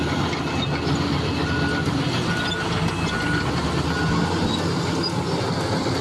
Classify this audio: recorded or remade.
recorded